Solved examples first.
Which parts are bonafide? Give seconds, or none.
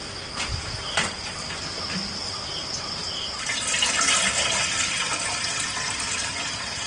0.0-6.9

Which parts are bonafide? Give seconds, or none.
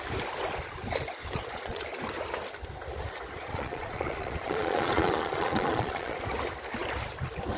0.0-1.2; 1.8-3.5; 6.2-7.6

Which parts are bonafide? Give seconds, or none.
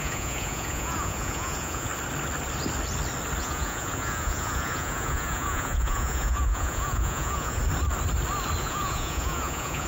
1.9-3.4; 7.6-8.6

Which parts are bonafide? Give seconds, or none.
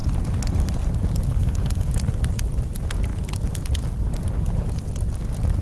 0.0-1.3; 1.9-5.6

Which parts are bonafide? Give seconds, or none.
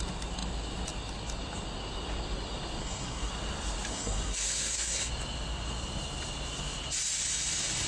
0.0-2.8; 3.3-3.9; 5.1-7.9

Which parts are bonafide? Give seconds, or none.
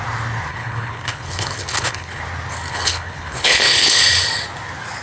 0.0-0.5; 2.2-2.7; 4.0-5.0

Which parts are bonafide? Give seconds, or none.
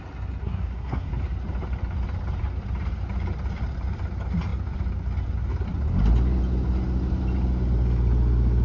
0.0-0.4; 1.1-8.6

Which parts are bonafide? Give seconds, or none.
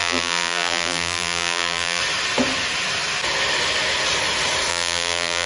2.0-4.7